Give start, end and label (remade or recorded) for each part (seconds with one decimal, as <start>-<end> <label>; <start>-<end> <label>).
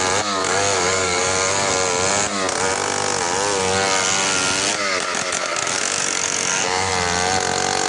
0.0-0.4 recorded; 0.4-1.7 remade; 1.7-4.7 recorded; 4.7-6.9 remade; 6.9-7.9 recorded